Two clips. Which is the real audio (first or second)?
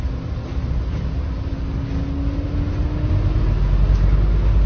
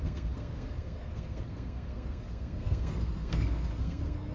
first